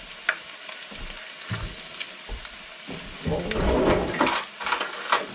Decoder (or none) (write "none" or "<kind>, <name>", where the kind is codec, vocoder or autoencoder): none